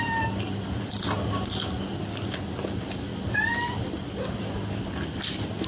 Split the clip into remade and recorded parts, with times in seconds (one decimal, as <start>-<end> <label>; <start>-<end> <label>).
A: 0.0-5.7 recorded